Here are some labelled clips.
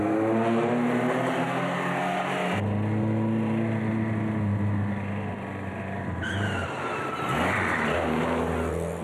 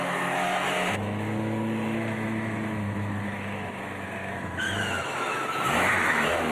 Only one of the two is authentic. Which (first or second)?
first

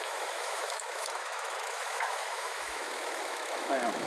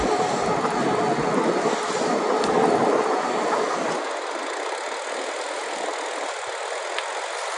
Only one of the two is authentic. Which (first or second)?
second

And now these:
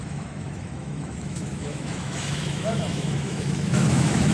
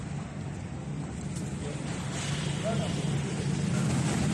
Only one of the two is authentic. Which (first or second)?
second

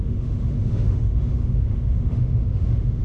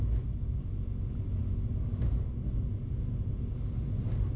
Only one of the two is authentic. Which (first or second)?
second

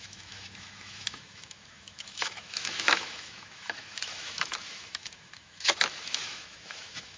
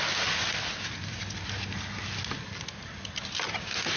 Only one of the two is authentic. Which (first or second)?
second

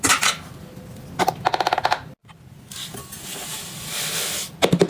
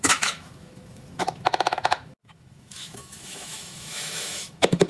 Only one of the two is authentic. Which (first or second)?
first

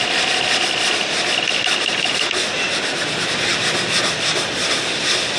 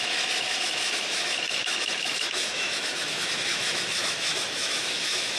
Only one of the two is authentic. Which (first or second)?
first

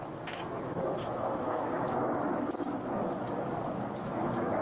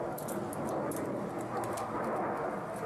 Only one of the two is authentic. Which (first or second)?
second